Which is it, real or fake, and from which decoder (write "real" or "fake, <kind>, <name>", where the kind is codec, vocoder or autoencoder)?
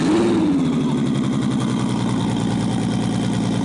real